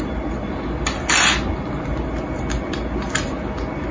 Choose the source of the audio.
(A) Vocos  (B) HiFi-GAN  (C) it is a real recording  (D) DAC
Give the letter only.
C